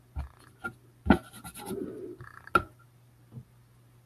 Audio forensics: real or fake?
real